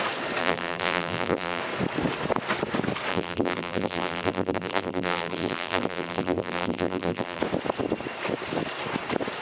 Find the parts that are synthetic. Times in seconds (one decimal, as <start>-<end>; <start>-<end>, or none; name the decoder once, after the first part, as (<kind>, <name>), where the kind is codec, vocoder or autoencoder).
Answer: 0.4-1.6 (vocoder, BigVGAN v2); 3.1-7.4